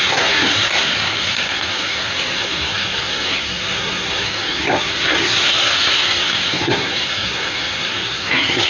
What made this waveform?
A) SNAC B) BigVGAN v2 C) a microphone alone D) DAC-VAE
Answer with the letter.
A